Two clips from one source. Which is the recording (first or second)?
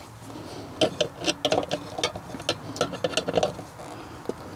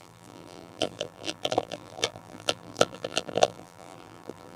first